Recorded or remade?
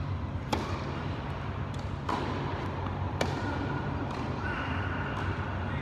recorded